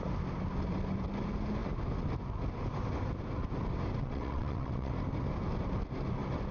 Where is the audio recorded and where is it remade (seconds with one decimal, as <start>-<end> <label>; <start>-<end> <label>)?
0.0-4.0 recorded; 4.0-4.9 remade; 4.9-6.5 recorded